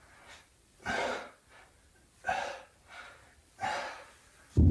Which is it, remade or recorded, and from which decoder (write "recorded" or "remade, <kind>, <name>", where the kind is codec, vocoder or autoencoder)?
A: remade, vocoder, BigVGAN v2